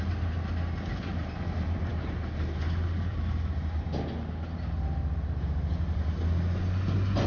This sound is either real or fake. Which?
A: real